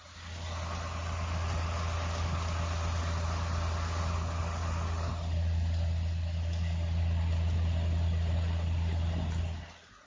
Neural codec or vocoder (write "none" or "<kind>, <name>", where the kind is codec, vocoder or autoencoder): none